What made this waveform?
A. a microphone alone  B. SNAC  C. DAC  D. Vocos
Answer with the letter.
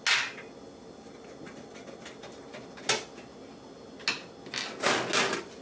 A